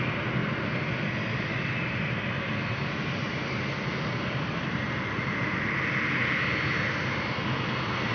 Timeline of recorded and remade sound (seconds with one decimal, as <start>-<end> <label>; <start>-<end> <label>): 0.0-8.1 recorded